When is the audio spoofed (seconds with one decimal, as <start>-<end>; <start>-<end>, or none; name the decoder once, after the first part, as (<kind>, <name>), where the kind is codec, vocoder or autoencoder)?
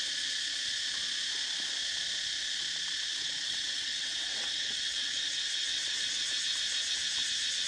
3.1-6.3 (vocoder, WaveNeXt)